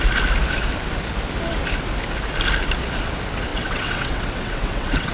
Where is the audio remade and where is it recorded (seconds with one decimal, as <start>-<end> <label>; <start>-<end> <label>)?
0.0-3.5 recorded; 3.5-5.1 remade